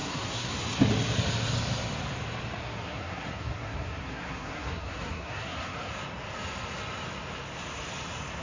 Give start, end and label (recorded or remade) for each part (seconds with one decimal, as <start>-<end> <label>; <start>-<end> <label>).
0.0-0.5 remade; 0.5-2.6 recorded; 2.6-5.9 remade; 5.9-8.4 recorded